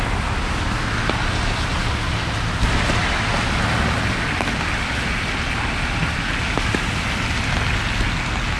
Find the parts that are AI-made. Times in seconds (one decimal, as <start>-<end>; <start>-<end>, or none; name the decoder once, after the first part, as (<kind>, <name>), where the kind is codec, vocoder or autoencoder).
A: none